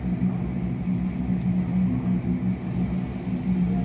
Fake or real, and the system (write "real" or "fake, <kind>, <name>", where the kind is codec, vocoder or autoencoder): real